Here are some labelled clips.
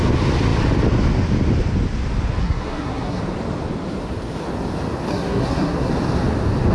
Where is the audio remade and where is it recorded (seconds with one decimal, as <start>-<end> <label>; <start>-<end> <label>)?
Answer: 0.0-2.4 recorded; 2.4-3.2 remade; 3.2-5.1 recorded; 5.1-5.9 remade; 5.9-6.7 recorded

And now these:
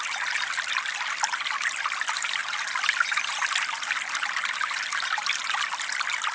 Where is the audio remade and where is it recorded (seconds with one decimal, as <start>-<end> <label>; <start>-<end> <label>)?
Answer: 0.0-6.3 recorded

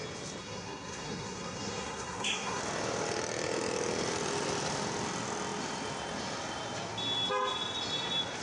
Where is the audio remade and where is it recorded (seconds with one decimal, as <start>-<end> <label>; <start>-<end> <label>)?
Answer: 0.0-0.4 recorded; 0.4-2.6 remade; 2.6-8.4 recorded

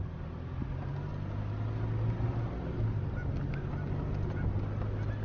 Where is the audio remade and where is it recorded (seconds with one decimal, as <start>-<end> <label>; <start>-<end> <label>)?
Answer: 0.0-5.2 recorded

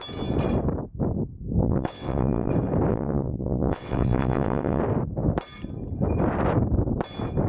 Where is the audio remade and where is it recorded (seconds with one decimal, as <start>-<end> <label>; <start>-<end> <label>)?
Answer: 0.0-1.6 recorded; 1.6-2.5 remade; 2.5-2.9 recorded; 2.9-4.8 remade; 4.8-7.5 recorded